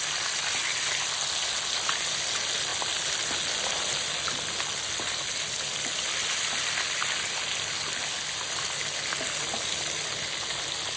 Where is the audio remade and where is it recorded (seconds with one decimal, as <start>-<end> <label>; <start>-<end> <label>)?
0.0-11.0 recorded